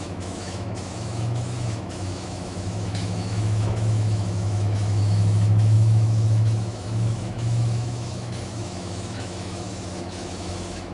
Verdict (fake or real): fake